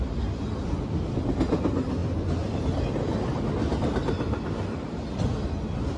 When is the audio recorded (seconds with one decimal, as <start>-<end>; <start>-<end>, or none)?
0.0-6.0